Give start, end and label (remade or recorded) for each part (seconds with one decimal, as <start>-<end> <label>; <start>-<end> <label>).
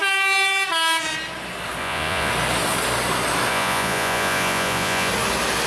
0.0-1.8 recorded; 1.8-2.3 remade; 2.3-3.5 recorded; 3.5-5.1 remade; 5.1-5.7 recorded